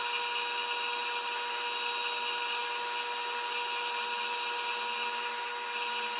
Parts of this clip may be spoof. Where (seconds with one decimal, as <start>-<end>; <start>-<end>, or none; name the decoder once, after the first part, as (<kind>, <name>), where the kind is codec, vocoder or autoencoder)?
none